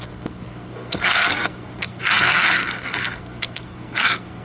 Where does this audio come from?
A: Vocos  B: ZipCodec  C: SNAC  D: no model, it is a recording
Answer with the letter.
C